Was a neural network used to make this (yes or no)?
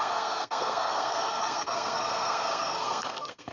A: yes